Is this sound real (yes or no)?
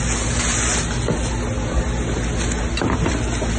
yes